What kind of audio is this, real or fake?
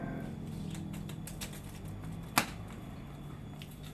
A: real